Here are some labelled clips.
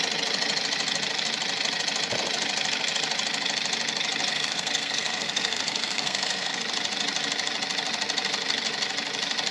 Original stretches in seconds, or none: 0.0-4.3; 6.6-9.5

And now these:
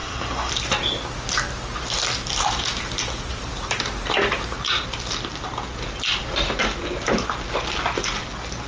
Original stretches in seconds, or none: 0.5-8.7

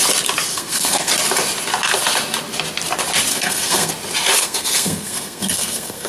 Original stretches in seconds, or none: 0.0-0.5; 1.1-3.3; 3.9-4.4